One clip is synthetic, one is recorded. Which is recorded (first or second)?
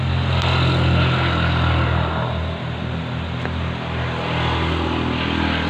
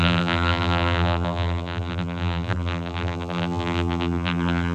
first